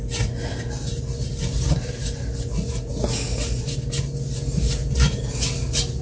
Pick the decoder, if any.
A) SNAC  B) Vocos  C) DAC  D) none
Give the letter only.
D